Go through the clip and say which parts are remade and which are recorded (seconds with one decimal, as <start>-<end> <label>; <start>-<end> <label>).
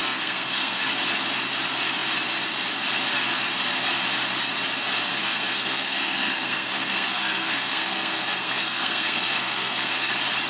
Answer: 0.0-0.9 remade; 0.9-5.1 recorded; 5.1-10.1 remade; 10.1-10.5 recorded